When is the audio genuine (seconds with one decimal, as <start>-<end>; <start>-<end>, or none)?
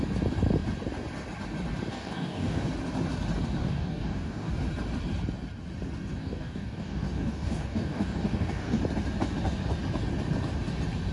0.0-1.9; 2.7-3.6; 4.5-6.2; 8.8-11.1